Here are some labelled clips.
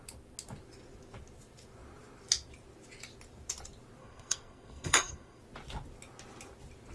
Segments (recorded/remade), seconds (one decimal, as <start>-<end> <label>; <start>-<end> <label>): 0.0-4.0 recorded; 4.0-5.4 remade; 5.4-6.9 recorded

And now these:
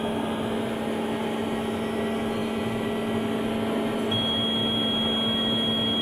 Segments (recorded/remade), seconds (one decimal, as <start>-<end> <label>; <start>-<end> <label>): 0.0-6.0 recorded

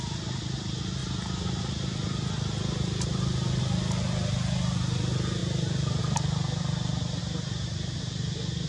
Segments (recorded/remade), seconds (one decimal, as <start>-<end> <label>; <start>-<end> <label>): 0.0-5.4 recorded; 5.4-6.0 remade; 6.0-7.2 recorded; 7.2-8.0 remade; 8.0-8.7 recorded

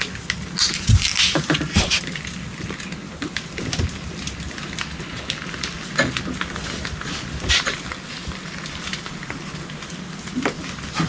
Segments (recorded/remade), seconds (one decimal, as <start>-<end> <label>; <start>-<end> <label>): 0.0-8.2 recorded; 8.2-9.6 remade; 9.6-11.1 recorded

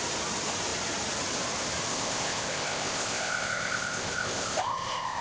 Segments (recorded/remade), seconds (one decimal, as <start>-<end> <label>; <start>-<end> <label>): 0.0-1.9 recorded; 1.9-5.2 remade